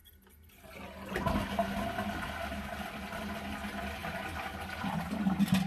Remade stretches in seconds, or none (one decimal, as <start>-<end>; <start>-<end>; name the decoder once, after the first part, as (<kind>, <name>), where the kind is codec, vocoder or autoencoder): none